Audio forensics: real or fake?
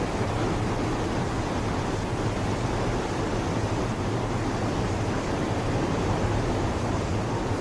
fake